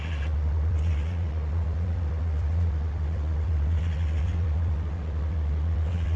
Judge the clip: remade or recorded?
remade